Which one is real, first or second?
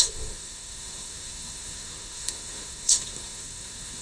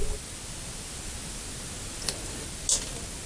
second